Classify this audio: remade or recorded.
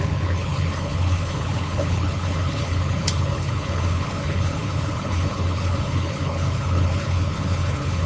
remade